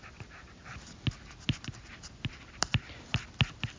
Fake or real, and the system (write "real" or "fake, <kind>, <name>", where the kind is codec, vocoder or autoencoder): real